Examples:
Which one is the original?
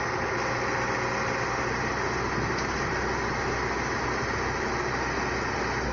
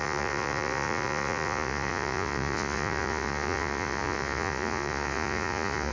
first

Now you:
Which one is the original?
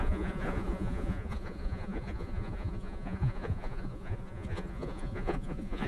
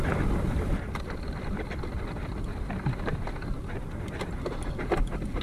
second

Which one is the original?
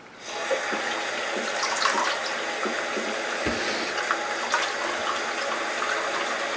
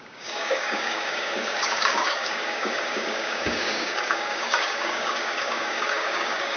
first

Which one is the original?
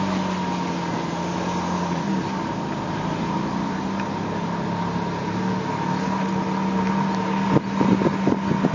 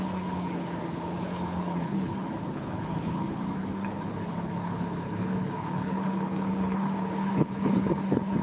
first